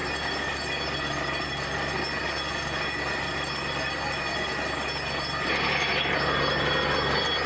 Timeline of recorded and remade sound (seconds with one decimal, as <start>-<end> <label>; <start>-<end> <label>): 0.0-7.5 recorded